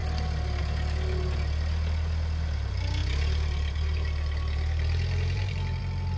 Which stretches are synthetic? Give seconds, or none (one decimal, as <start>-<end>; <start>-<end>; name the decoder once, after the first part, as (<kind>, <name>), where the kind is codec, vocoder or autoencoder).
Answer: 3.0-5.8 (vocoder, BigVGAN v2)